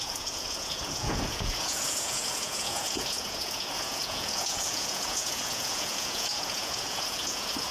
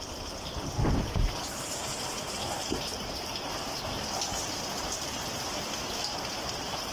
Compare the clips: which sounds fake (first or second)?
first